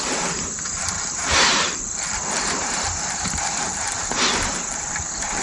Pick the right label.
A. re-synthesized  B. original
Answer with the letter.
A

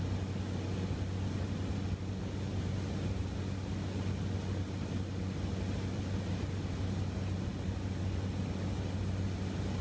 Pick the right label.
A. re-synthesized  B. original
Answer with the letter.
B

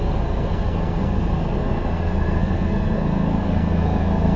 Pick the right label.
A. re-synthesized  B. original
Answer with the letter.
A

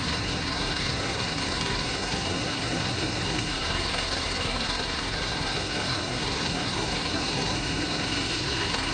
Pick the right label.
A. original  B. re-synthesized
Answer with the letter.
B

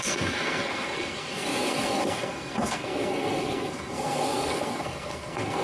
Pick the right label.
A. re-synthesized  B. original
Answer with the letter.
A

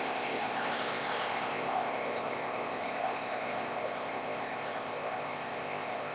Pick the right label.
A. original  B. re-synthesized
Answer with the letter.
B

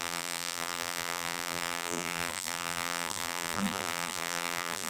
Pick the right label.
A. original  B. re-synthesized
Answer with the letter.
B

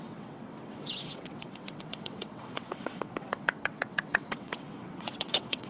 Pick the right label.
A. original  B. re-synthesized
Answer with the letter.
B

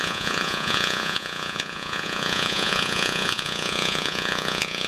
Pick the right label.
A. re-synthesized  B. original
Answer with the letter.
A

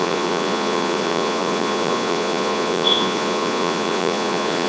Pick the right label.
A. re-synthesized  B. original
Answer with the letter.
A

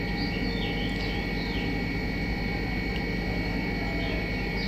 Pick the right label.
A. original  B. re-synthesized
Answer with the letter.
A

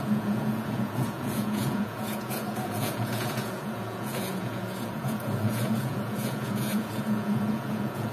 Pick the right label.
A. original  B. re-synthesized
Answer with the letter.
B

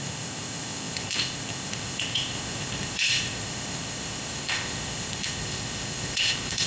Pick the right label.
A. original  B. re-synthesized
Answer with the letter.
B